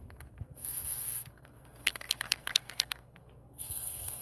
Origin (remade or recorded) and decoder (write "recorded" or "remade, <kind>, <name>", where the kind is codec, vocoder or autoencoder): remade, codec, SNAC